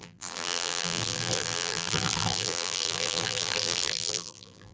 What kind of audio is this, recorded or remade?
remade